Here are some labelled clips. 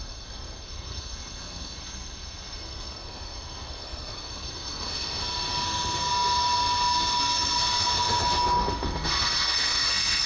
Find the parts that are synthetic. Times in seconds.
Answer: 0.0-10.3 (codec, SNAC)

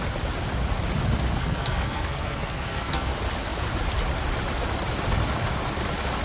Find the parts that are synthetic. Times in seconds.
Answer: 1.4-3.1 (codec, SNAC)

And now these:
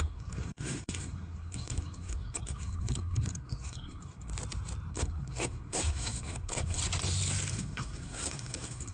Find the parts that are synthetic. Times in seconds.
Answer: 0.0-4.3 (codec, SNAC); 4.9-6.8; 7.5-8.9

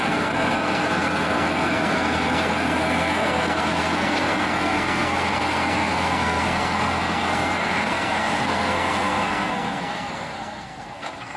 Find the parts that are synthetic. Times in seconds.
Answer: 0.0-11.4 (codec, SNAC)